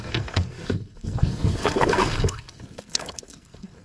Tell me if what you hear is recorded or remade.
remade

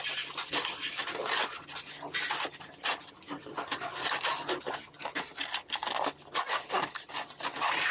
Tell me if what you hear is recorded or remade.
recorded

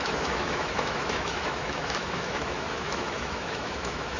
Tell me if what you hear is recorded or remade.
remade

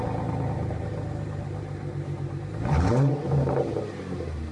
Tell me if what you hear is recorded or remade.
remade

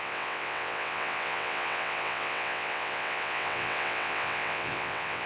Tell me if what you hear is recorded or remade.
remade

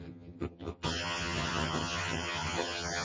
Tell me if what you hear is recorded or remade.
remade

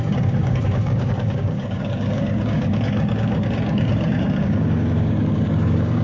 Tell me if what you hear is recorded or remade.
remade